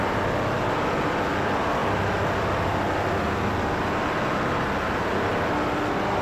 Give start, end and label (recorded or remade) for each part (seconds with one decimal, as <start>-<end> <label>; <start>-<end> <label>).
0.0-6.2 recorded